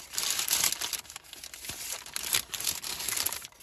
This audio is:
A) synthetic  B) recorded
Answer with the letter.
B